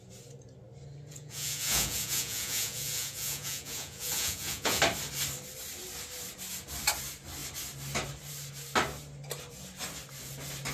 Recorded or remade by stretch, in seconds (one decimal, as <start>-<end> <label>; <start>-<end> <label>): 0.0-1.1 recorded; 1.1-4.8 remade; 4.8-10.7 recorded